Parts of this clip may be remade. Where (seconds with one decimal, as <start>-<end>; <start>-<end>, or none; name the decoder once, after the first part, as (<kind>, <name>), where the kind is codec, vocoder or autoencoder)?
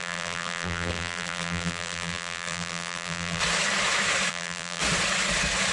0.0-3.4 (vocoder, BigVGAN v2); 4.3-4.8